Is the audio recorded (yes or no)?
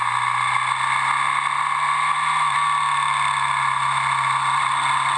yes